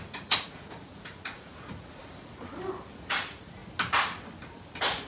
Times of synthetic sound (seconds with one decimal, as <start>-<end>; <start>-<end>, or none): 0.0-2.0; 3.1-3.6